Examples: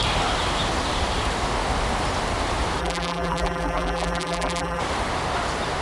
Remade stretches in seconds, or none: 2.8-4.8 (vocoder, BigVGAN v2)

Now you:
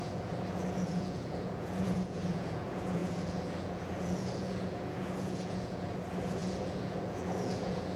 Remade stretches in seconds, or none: 0.0-8.0 (vocoder, Vocos)

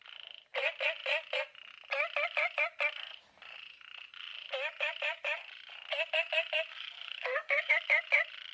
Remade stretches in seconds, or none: 6.7-7.7 (codec, SNAC)

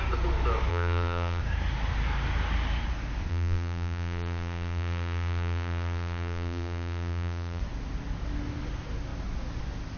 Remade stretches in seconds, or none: 0.7-1.4 (vocoder, BigVGAN v2); 3.3-7.6

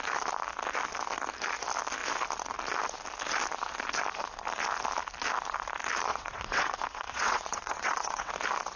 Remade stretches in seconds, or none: 6.1-8.3 (vocoder, WaveNeXt)

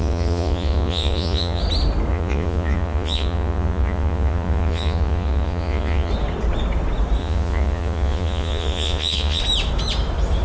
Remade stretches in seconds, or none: 0.0-1.6 (vocoder, Vocos); 2.1-6.1; 7.2-9.4

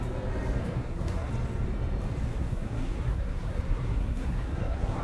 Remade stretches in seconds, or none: 0.6-1.3 (codec, SNAC); 2.4-5.0

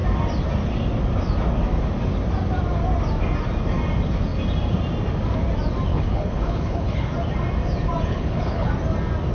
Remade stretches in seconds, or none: 5.9-7.1 (codec, HILCodec); 8.1-8.7